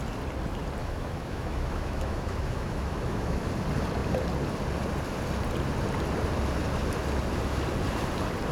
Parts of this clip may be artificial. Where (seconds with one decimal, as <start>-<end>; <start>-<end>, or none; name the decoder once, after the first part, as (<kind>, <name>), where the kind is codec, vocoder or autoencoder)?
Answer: 0.8-3.5 (autoencoder, DAC-VAE)